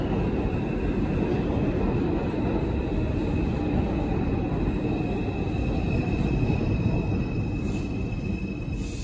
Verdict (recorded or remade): recorded